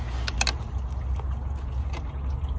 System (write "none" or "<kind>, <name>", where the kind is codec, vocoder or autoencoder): none